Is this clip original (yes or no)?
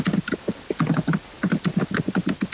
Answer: yes